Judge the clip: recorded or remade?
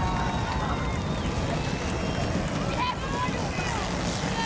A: recorded